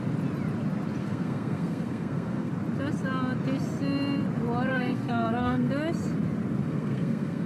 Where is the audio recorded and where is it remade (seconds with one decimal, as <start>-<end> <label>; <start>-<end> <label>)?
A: 0.0-1.0 recorded; 1.0-2.5 remade; 2.5-4.7 recorded; 4.7-5.7 remade; 5.7-6.6 recorded; 6.6-7.5 remade

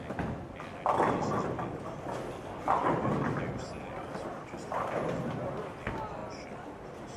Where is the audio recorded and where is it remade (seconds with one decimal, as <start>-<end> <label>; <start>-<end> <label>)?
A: 0.0-7.2 recorded

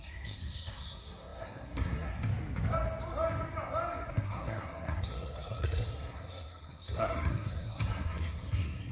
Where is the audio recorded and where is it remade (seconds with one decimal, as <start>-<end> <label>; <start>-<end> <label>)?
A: 0.0-2.3 remade; 2.3-4.1 recorded; 4.1-8.9 remade